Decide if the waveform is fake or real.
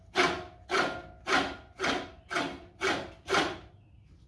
real